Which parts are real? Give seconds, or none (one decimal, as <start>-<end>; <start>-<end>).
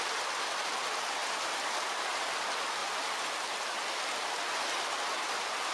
0.0-5.7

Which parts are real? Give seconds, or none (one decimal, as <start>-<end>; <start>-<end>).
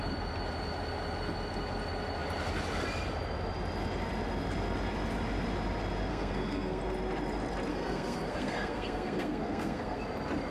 0.0-6.1; 6.8-7.7; 10.0-10.5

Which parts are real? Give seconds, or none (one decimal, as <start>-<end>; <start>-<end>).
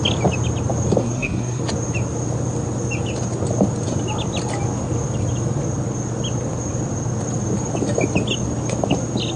0.0-1.0; 1.6-9.4